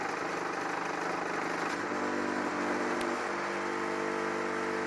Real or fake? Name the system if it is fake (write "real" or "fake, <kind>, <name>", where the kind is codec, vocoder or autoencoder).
real